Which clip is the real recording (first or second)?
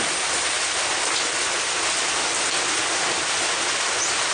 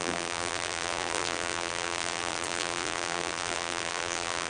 first